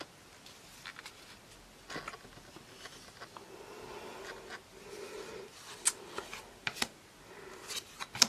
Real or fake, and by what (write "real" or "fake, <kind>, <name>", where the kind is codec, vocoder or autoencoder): real